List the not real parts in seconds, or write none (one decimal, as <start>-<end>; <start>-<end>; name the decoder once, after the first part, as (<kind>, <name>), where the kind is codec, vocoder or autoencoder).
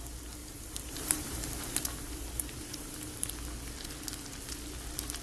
0.4-2.3 (vocoder, BigVGAN v2); 2.7-3.3